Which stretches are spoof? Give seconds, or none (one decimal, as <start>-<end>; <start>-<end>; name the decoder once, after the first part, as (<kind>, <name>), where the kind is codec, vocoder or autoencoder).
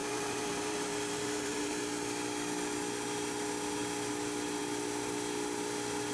0.0-1.9 (vocoder, BigVGAN v2)